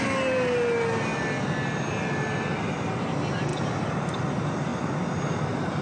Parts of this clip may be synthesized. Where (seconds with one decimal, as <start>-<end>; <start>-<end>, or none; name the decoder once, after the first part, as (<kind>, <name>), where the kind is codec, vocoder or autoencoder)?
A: 0.0-1.1 (vocoder, BigVGAN v2); 2.0-4.7; 5.3-5.8